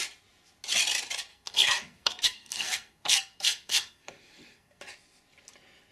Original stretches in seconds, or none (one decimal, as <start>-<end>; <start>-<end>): 0.0-1.3; 4.8-5.9